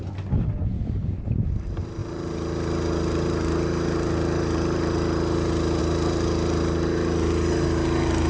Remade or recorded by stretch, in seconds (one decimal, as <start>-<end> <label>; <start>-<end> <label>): 0.0-8.3 recorded